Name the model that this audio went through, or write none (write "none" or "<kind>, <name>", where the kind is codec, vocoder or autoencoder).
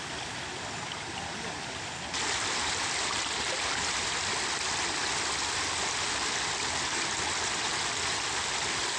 none